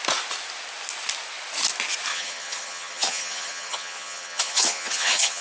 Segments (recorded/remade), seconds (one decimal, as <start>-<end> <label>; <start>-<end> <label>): 0.0-2.1 recorded; 2.1-5.4 remade